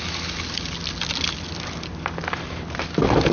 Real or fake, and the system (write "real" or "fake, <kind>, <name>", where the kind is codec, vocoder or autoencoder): real